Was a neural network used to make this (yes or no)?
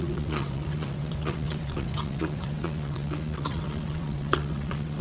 yes